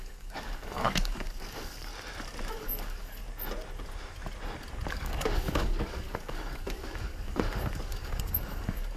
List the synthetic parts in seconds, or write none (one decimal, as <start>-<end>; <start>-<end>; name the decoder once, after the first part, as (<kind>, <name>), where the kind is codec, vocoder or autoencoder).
0.0-1.9 (codec, DAC); 2.5-3.2; 4.9-9.0